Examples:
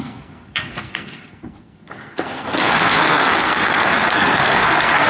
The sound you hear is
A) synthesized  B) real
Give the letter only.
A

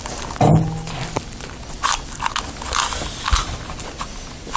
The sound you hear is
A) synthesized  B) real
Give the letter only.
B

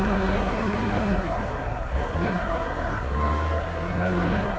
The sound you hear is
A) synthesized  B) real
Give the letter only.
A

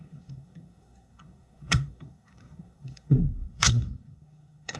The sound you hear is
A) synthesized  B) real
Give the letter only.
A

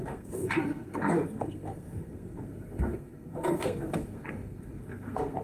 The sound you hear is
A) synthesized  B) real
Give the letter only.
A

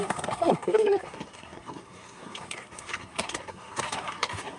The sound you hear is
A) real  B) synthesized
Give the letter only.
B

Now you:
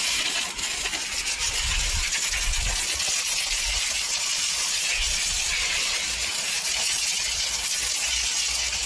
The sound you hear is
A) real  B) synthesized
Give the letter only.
A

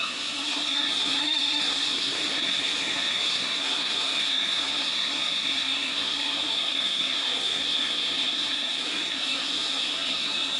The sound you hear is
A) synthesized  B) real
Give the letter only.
A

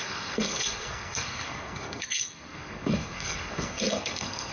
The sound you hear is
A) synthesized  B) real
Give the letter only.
A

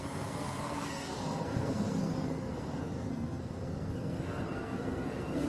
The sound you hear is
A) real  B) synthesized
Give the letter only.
B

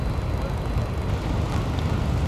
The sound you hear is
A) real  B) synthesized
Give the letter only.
A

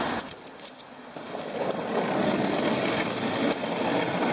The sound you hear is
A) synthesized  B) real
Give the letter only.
B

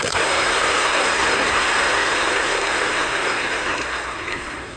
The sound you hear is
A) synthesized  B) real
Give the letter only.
A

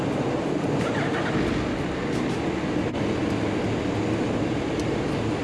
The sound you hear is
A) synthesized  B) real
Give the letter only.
B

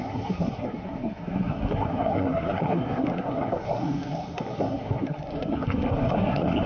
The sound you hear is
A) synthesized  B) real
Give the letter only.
A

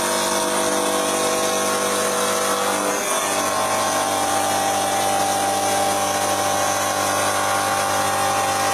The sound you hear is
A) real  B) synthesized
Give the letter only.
A